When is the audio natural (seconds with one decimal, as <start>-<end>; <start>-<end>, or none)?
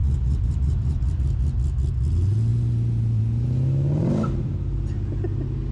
1.1-2.5; 3.2-5.7